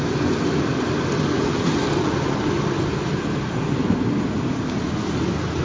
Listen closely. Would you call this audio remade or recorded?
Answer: recorded